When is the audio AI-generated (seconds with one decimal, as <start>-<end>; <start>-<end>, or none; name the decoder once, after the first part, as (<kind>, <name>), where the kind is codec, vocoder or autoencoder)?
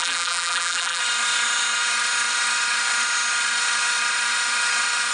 0.0-1.0 (vocoder, BigVGAN v2)